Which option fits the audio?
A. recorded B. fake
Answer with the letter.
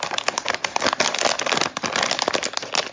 A